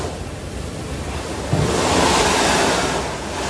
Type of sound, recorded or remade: recorded